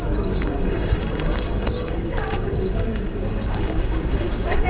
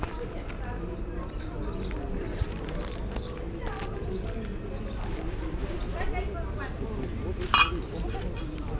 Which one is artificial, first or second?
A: first